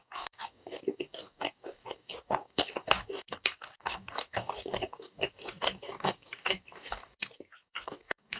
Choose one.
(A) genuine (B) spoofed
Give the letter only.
B